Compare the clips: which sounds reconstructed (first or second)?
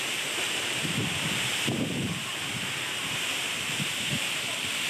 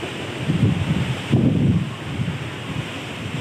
first